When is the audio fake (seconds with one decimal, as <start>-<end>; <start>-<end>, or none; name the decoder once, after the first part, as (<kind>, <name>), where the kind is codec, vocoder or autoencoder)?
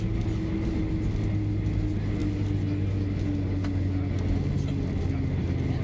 none